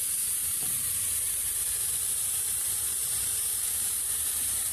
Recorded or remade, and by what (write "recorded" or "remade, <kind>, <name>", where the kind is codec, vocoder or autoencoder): remade, vocoder, BigVGAN v2